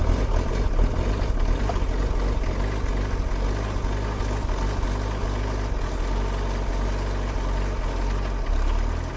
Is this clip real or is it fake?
real